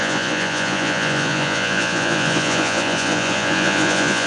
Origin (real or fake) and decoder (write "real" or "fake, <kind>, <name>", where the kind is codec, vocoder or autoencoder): fake, vocoder, Vocos